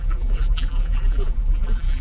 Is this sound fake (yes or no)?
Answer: yes